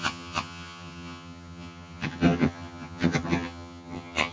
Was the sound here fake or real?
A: fake